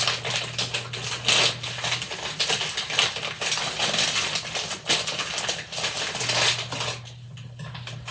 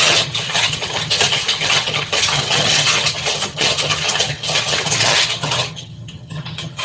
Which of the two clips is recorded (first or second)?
first